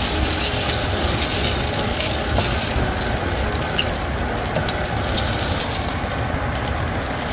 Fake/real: real